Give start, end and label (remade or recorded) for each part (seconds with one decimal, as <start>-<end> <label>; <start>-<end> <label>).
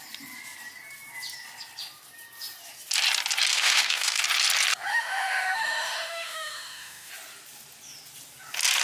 0.0-3.5 recorded; 3.5-4.2 remade; 4.2-4.9 recorded; 4.9-7.1 remade; 7.1-8.8 recorded